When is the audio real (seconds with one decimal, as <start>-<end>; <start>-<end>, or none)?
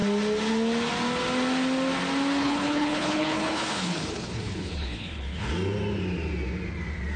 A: 0.0-2.4; 5.5-7.2